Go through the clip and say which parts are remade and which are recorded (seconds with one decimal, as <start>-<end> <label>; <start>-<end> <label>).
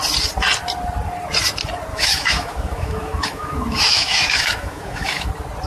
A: 0.0-1.9 recorded; 1.9-5.3 remade; 5.3-5.7 recorded